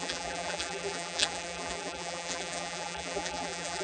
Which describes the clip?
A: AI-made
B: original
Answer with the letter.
A